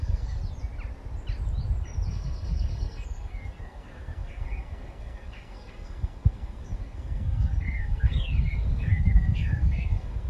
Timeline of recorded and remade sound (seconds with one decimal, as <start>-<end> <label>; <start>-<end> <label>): 0.0-0.4 remade; 0.4-2.1 recorded; 2.1-10.3 remade